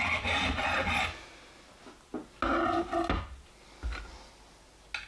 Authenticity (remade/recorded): recorded